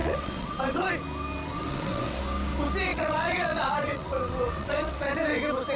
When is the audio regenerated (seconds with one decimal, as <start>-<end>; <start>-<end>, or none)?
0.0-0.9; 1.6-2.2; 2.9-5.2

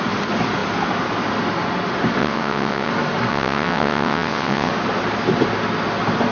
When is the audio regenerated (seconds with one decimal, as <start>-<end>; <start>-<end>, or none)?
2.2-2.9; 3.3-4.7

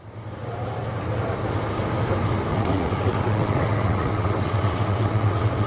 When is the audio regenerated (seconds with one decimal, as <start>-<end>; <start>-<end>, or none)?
2.5-5.7

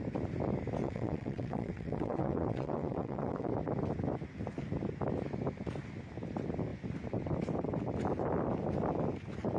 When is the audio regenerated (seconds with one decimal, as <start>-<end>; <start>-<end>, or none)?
0.8-3.5

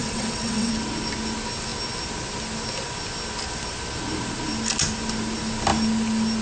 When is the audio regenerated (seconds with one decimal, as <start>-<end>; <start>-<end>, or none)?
0.0-0.7

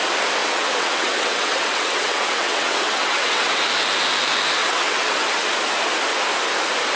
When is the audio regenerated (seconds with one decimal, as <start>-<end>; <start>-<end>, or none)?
0.4-3.6; 4.6-5.2